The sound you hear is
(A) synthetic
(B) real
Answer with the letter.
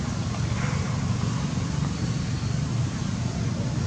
B